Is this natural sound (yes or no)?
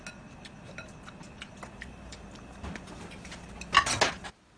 yes